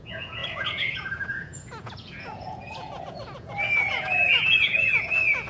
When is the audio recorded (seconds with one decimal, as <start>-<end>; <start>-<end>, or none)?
none